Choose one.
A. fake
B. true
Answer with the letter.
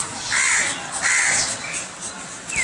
B